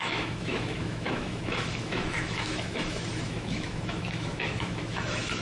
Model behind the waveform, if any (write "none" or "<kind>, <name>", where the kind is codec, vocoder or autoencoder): autoencoder, DAC-VAE